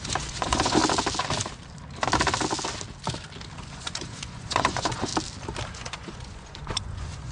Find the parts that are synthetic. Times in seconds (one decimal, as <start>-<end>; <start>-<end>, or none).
0.0-0.8; 3.6-5.1; 5.7-7.3